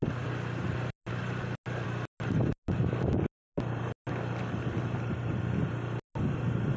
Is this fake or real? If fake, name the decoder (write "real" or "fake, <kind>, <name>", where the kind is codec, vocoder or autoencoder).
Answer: real